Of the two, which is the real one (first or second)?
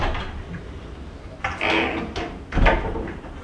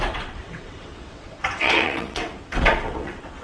first